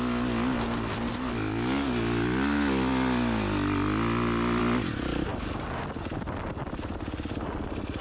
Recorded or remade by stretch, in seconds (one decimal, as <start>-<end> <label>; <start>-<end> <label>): 0.0-8.0 recorded